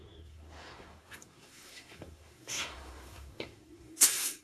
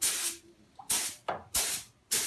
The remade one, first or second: first